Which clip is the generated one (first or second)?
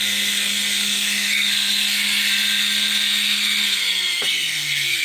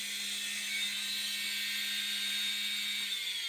first